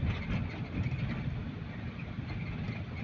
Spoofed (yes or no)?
no